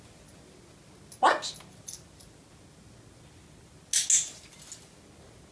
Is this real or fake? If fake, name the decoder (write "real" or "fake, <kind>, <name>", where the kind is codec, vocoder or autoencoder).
real